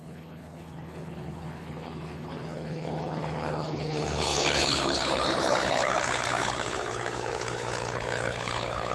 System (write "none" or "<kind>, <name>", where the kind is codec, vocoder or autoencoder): codec, HILCodec